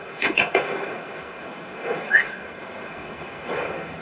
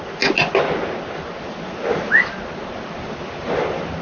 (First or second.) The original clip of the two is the second